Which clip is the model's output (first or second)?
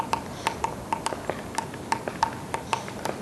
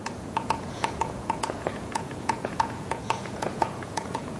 second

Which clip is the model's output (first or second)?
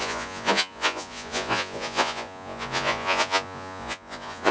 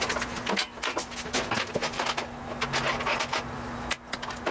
first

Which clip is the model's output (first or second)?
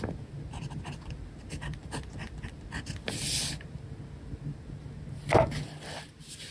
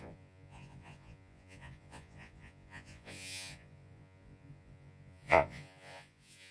second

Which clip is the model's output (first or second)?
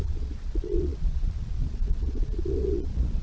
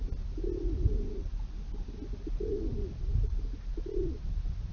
first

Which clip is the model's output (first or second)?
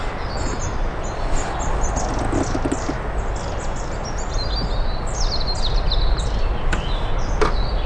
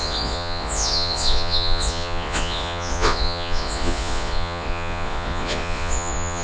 second